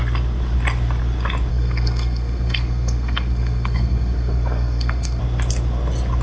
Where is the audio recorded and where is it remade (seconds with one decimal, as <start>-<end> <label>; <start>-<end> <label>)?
0.0-1.5 recorded; 1.5-5.2 remade; 5.2-6.2 recorded